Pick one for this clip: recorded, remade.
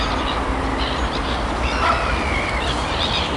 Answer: recorded